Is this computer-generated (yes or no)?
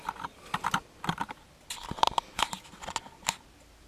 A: no